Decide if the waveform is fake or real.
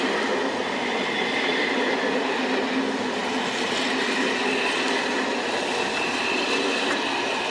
real